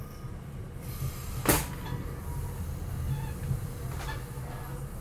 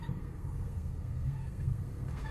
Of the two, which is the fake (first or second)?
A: second